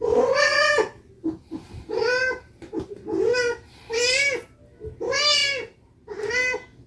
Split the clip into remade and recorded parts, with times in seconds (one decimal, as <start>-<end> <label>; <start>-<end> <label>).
0.0-6.9 recorded